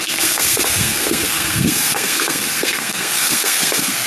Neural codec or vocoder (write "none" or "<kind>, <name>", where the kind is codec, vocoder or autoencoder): codec, SNAC